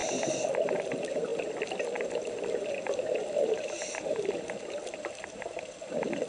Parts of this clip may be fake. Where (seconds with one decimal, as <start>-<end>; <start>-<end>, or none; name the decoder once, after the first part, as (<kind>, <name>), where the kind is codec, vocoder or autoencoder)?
0.5-1.3 (vocoder, BigVGAN v2); 2.7-6.3